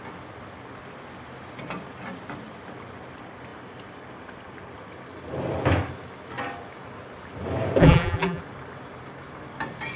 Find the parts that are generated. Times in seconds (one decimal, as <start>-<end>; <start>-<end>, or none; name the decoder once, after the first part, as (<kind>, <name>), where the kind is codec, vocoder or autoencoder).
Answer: 7.8-8.4 (vocoder, BigVGAN v2)

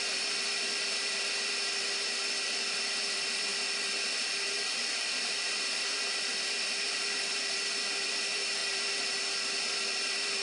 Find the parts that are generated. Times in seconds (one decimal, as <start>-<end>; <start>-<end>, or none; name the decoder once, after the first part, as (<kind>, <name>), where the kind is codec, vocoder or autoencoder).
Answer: 0.0-10.4 (vocoder, BigVGAN v2)

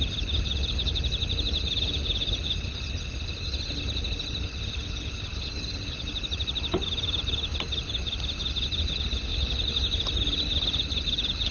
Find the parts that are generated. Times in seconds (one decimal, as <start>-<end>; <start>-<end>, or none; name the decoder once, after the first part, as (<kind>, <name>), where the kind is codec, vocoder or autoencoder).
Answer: 9.3-10.0 (vocoder, BigVGAN v2)

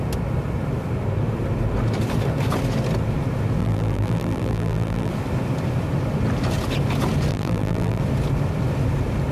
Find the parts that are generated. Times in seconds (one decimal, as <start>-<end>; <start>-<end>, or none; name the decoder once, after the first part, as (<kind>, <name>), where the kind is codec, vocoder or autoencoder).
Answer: 3.6-5.1 (vocoder, BigVGAN v2); 7.3-8.0

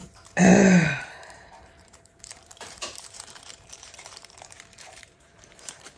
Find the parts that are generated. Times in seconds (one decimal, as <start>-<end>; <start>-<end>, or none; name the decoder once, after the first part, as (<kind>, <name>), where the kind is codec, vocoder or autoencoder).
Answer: 0.0-6.0 (vocoder, BigVGAN v2)